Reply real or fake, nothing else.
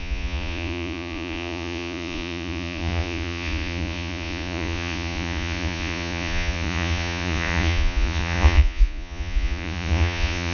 fake